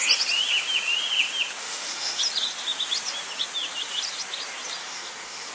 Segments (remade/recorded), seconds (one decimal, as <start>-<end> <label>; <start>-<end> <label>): 0.0-1.6 recorded; 1.6-2.2 remade; 2.2-4.8 recorded; 4.8-5.5 remade